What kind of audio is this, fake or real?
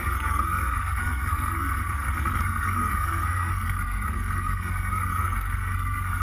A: fake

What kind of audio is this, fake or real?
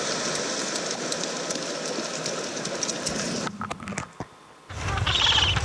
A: real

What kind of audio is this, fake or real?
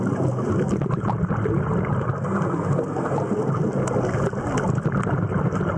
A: real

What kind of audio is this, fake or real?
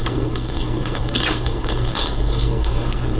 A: fake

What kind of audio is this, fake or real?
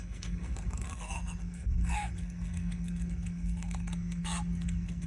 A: fake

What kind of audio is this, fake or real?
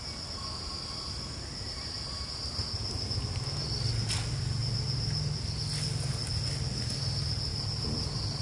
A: real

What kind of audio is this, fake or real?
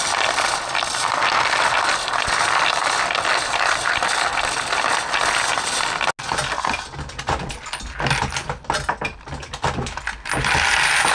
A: real